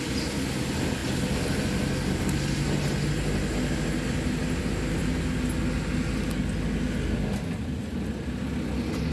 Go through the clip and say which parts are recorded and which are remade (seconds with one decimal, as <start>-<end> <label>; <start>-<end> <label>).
0.0-9.1 recorded